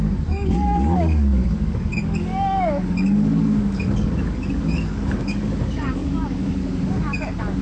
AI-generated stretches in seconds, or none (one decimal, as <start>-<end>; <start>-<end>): 0.0-7.6